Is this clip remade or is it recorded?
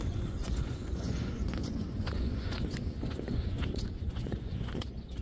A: remade